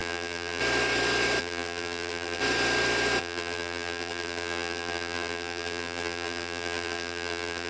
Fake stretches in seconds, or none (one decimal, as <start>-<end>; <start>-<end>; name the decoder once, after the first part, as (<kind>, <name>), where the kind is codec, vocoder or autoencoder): 0.0-0.6 (vocoder, BigVGAN v2); 1.4-2.4; 3.2-7.7